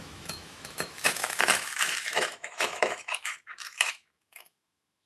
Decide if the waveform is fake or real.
fake